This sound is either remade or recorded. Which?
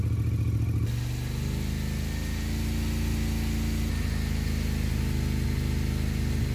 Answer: recorded